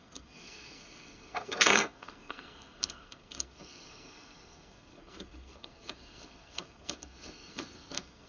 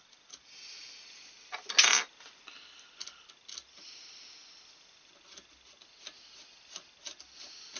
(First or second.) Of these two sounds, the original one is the second